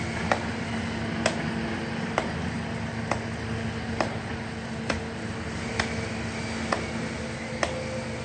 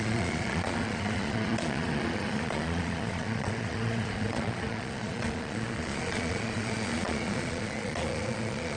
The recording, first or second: first